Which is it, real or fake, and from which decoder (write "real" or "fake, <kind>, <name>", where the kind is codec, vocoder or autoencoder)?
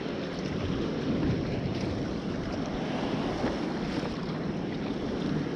real